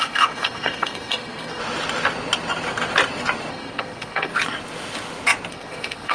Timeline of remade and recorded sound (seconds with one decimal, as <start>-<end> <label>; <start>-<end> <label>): 0.0-1.6 remade; 1.6-3.5 recorded; 3.5-4.3 remade; 4.3-5.5 recorded; 5.5-6.1 remade